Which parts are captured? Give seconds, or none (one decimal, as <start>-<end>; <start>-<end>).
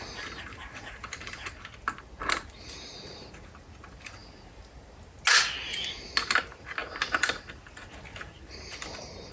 0.0-9.3